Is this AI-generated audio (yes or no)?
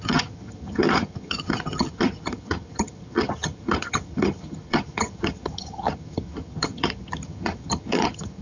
yes